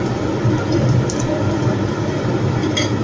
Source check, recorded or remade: recorded